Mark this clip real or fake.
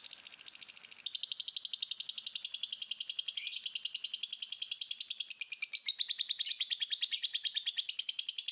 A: real